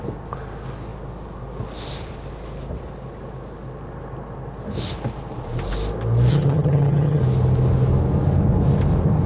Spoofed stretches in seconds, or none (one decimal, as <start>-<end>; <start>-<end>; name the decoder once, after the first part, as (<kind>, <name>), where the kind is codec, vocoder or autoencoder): 6.3-7.2 (vocoder, HiFi-GAN)